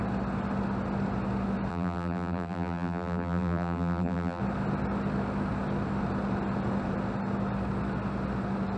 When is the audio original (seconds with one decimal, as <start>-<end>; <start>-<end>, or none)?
0.0-1.7; 4.4-8.8